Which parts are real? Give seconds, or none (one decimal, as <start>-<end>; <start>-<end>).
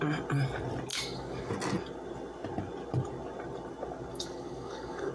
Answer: 0.0-0.9; 1.5-4.1